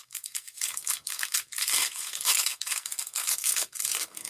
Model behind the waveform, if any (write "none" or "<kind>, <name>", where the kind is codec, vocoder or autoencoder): codec, SNAC